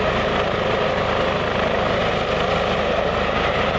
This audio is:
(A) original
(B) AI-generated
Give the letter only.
A